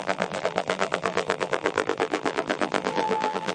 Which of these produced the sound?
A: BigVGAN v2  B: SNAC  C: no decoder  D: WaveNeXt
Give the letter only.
A